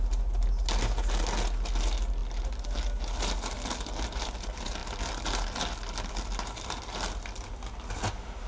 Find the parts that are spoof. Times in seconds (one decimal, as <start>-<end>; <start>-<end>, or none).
none